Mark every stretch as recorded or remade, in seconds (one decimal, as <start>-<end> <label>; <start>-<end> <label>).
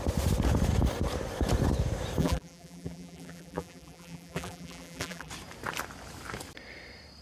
0.0-2.2 recorded; 2.2-5.3 remade; 5.3-7.2 recorded